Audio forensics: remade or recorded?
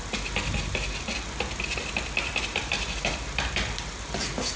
recorded